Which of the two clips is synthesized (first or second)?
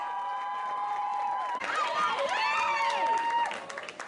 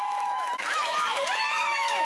second